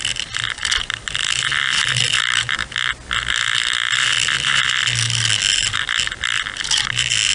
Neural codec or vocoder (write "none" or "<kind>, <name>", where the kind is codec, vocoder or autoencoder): none